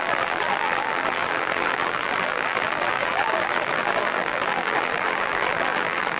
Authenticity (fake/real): fake